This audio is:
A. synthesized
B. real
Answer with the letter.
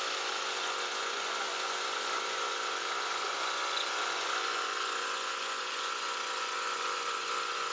A